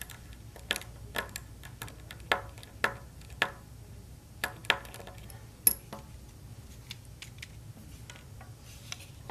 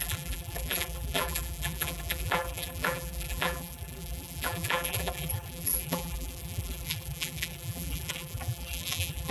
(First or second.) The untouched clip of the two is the first